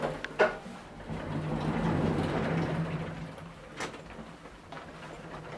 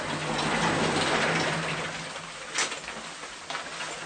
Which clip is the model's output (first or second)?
first